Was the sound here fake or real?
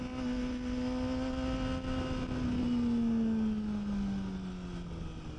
real